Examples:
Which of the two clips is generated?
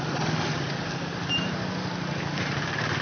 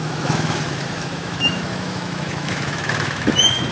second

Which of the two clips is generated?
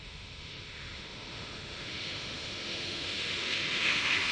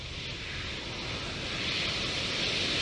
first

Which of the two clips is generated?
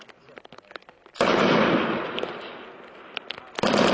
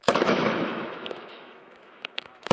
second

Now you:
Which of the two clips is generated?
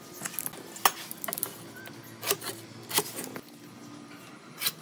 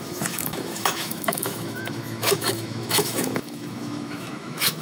second